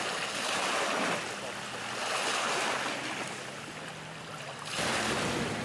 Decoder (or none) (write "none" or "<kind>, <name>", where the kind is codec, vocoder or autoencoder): none